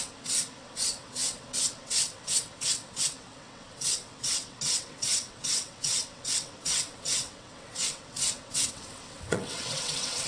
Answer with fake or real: fake